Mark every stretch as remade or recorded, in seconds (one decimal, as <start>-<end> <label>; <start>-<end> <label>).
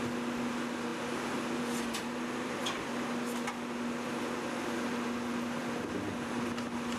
0.0-7.0 recorded